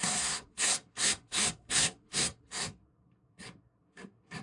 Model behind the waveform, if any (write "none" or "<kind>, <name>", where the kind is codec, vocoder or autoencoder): codec, SNAC